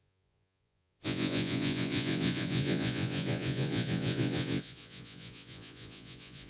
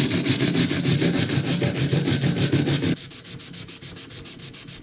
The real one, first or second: second